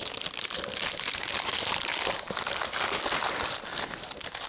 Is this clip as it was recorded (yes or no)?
yes